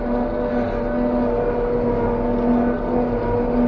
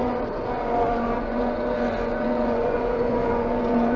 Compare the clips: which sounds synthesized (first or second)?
second